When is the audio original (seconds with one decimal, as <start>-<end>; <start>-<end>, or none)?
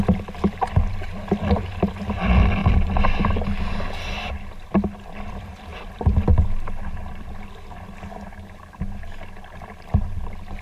0.0-10.6